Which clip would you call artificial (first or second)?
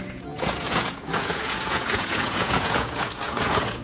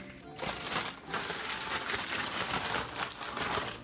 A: first